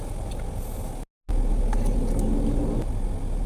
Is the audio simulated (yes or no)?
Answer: no